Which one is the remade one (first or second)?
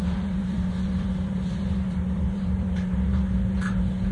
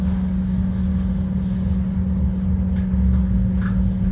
first